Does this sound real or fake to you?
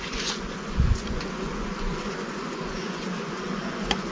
fake